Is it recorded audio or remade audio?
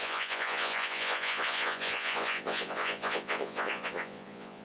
remade